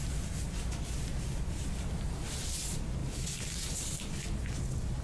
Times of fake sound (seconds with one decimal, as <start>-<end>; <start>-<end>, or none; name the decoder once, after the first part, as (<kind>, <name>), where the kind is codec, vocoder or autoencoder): none